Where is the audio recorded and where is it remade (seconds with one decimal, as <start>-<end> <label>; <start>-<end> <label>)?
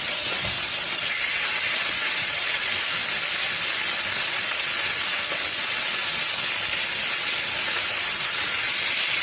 0.0-3.0 remade; 3.0-4.0 recorded; 4.0-6.0 remade; 6.0-7.1 recorded; 7.1-9.2 remade